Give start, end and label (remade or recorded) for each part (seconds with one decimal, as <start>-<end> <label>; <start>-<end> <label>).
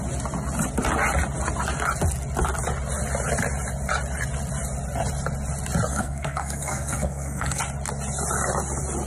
0.0-5.9 recorded; 5.9-7.6 remade; 7.6-9.1 recorded